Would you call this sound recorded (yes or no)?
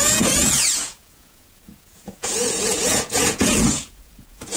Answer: no